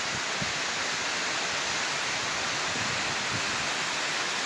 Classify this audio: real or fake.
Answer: real